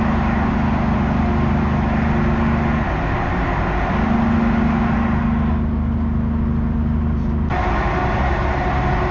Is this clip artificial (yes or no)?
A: no